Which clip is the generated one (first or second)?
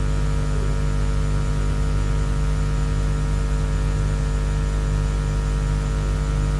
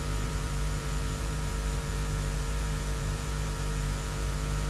second